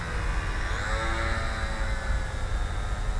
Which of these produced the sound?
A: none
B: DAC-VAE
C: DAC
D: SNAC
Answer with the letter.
A